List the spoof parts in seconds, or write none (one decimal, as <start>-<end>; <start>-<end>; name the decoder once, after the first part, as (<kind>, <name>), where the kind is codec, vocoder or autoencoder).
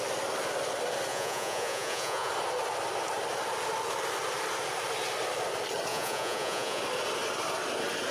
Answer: 1.1-2.3 (vocoder, Vocos); 5.9-6.8